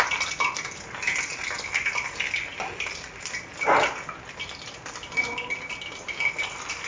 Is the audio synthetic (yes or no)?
no